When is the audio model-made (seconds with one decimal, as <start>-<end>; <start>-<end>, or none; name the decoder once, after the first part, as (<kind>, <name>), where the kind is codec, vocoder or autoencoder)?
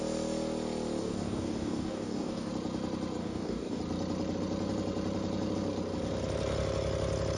1.0-2.5 (codec, DAC); 3.2-3.8